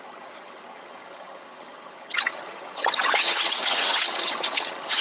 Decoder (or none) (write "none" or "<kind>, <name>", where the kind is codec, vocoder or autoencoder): vocoder, HiFi-GAN